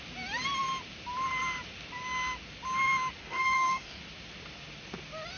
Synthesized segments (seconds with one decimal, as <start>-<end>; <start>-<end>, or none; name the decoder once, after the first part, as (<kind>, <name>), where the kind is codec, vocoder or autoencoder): 3.2-4.0 (codec, DAC)